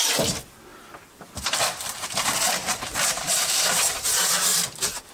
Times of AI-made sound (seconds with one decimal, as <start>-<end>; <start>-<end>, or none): 0.7-3.8; 4.5-5.1